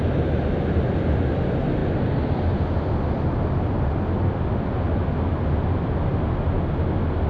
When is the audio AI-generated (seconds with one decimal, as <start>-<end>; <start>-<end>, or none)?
none